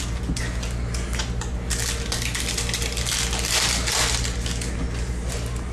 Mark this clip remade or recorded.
recorded